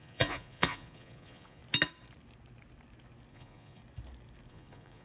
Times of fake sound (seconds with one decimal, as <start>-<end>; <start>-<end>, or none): 0.0-1.6; 3.3-3.8; 4.5-5.0